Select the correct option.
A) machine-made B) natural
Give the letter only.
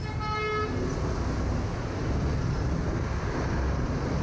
B